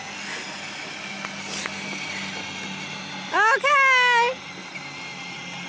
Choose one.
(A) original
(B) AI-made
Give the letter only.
A